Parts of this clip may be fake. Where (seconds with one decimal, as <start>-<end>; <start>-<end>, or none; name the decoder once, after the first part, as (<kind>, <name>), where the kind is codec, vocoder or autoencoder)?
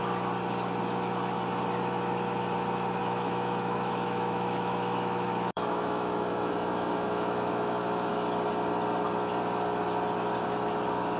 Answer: 3.0-8.1 (autoencoder, DAC-VAE)